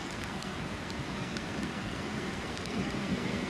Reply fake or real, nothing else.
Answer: fake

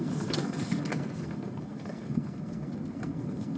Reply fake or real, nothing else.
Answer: fake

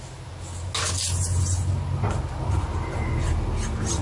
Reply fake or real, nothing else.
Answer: real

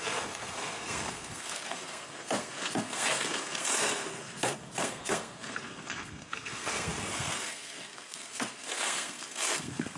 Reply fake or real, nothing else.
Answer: fake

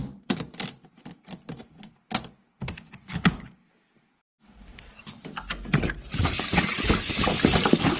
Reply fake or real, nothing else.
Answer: real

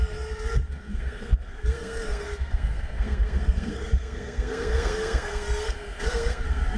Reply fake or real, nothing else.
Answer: fake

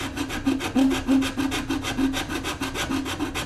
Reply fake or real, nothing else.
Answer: real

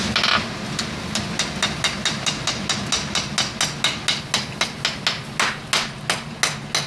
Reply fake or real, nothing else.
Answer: real